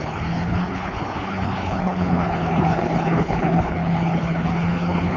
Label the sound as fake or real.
fake